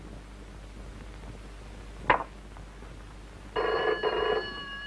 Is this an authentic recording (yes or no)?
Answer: yes